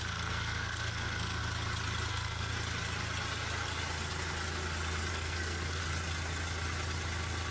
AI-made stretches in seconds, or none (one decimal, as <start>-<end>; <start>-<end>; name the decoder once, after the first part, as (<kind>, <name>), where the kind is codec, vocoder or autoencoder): 0.0-1.4 (codec, SNAC); 2.1-2.5; 5.1-5.8